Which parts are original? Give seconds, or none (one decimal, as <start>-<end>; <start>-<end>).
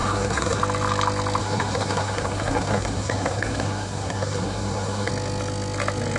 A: 0.6-1.4; 5.1-6.2